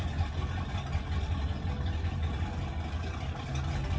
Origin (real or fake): real